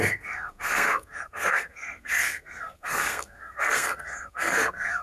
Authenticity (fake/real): fake